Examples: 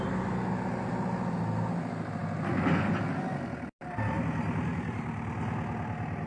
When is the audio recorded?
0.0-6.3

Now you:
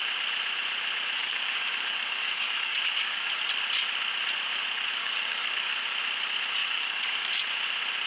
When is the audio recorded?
0.0-1.2; 3.3-5.0; 5.8-6.6; 7.3-8.1

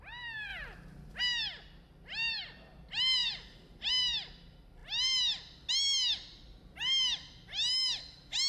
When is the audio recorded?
0.0-0.5; 1.2-3.2; 3.9-8.5

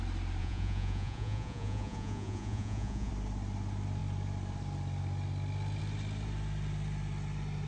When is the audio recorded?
0.0-0.4; 3.1-7.7

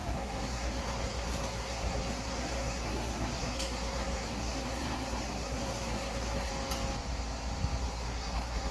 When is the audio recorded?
6.5-7.8

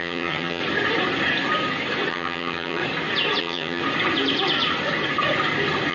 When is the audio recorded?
0.6-2.1; 2.8-3.4; 3.8-5.9